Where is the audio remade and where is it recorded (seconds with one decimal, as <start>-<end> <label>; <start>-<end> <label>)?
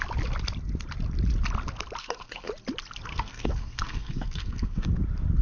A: 0.0-2.0 recorded; 2.0-2.5 remade; 2.5-3.1 recorded; 3.1-4.9 remade; 4.9-5.4 recorded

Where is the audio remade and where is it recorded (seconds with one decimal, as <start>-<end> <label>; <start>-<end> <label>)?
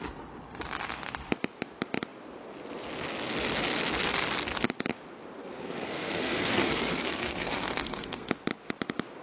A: 0.0-5.4 recorded; 5.4-8.3 remade; 8.3-9.2 recorded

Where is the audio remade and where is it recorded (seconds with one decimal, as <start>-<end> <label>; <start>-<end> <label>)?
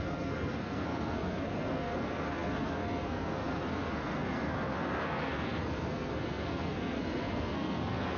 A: 0.0-8.2 remade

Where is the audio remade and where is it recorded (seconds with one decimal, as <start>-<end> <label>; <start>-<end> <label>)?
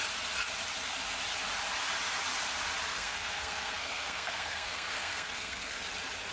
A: 0.0-2.9 recorded; 2.9-5.8 remade; 5.8-6.3 recorded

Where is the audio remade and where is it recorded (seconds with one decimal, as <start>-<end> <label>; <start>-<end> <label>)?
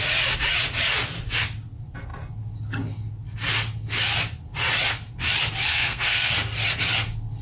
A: 0.0-5.7 recorded; 5.7-6.3 remade; 6.3-7.4 recorded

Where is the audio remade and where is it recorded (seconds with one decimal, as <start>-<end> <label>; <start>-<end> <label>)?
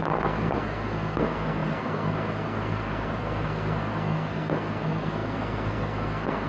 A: 0.0-6.5 remade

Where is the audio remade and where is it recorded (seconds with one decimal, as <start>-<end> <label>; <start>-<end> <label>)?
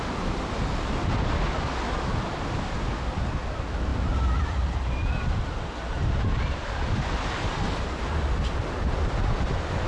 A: 0.0-9.9 recorded